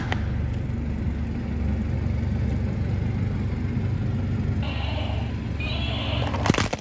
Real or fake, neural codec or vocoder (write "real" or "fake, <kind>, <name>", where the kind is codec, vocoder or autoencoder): real